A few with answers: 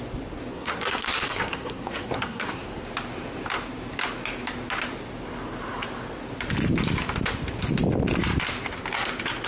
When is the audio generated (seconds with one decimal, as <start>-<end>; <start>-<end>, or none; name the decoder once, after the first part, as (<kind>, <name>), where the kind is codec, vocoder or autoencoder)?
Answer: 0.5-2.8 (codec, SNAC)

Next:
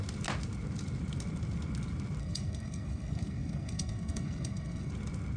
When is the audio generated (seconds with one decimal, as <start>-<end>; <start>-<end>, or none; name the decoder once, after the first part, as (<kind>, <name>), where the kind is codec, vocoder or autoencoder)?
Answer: 2.2-4.9 (codec, SNAC)

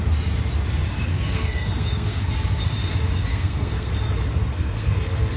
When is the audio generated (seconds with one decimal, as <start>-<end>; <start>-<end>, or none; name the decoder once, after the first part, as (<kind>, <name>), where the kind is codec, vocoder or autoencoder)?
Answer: 1.1-2.3 (codec, SNAC); 3.3-3.9; 4.5-5.4

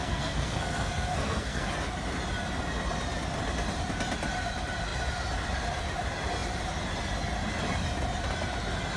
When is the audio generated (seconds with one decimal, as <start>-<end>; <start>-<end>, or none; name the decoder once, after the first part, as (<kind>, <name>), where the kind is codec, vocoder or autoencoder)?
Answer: 0.0-1.7 (codec, SNAC)

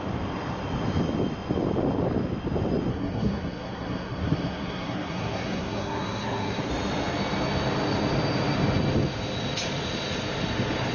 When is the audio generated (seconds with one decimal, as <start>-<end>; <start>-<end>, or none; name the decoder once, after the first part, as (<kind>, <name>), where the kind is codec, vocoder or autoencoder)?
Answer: 2.9-6.7 (codec, SNAC)

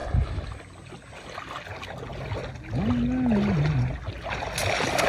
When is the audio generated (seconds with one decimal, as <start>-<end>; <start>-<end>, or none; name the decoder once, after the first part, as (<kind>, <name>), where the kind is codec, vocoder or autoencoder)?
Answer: none

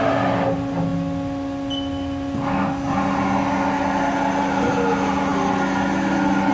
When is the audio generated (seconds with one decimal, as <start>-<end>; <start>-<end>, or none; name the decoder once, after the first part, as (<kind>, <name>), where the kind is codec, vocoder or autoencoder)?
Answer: none

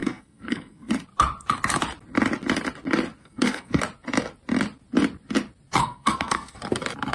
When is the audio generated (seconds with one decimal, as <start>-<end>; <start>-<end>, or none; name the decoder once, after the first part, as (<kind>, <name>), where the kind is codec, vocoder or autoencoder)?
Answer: 0.0-0.9 (codec, SNAC); 3.2-3.8; 5.8-6.6